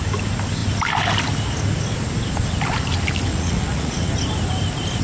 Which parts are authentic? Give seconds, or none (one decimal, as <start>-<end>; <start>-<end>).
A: 0.0-3.3; 4.1-5.0